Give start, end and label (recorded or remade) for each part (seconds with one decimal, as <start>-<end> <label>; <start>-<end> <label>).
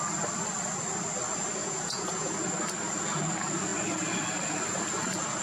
0.0-1.6 recorded; 1.6-2.3 remade; 2.3-5.4 recorded